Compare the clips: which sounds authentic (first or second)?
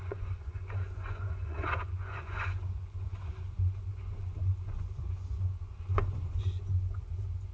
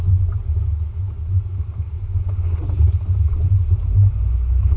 second